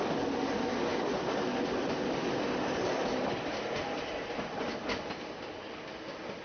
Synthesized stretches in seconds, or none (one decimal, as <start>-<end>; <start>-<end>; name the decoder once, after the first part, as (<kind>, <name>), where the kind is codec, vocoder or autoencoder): none